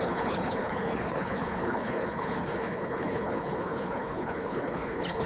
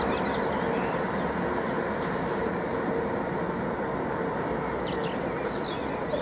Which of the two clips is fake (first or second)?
first